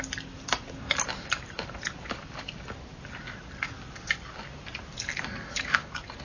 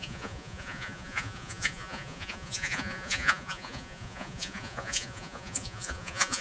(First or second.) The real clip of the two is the first